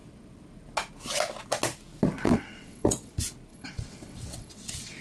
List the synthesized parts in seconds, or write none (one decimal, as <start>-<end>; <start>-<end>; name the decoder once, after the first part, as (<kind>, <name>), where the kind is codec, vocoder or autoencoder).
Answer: 2.2-3.1 (vocoder, WaveNeXt); 3.5-5.0